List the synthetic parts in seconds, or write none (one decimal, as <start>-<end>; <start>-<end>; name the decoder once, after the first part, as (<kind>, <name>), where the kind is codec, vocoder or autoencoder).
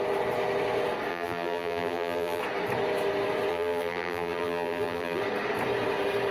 1.1-2.4 (vocoder, BigVGAN v2); 3.5-5.2